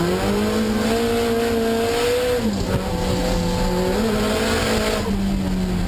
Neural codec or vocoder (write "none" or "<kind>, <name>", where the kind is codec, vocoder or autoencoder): none